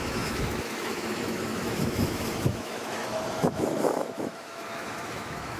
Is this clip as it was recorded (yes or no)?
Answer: no